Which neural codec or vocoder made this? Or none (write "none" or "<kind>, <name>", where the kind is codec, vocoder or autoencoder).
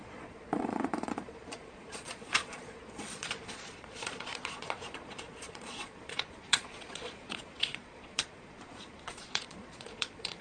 vocoder, Vocos